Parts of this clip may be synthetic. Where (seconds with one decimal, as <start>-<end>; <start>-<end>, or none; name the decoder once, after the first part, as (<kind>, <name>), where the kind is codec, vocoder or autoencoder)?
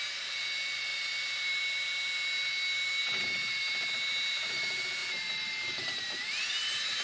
0.0-7.0 (vocoder, BigVGAN v2)